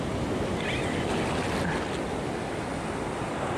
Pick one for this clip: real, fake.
real